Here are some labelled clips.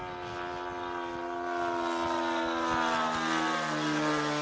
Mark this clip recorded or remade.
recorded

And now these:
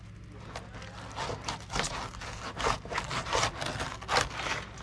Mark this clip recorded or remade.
recorded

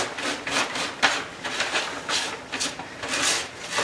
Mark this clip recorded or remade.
recorded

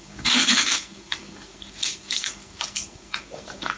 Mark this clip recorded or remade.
remade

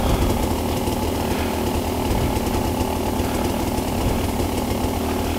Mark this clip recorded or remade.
remade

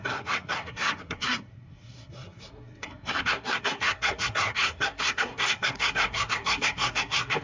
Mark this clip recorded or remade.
remade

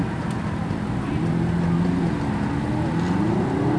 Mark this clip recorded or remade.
recorded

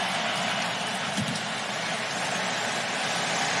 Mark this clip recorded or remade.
recorded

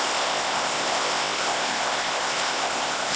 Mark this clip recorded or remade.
remade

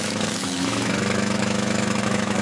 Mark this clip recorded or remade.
remade